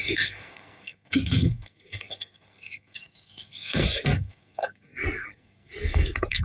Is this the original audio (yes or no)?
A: no